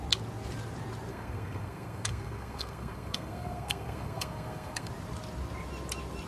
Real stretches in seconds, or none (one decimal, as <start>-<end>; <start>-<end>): 0.0-1.1; 4.9-6.3